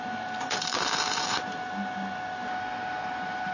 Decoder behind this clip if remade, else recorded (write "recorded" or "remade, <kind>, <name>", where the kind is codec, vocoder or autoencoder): recorded